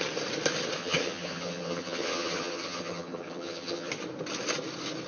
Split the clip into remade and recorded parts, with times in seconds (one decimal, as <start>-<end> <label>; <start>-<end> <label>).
0.0-0.8 recorded; 0.8-3.9 remade; 3.9-5.1 recorded